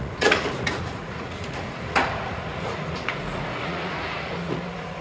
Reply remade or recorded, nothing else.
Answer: remade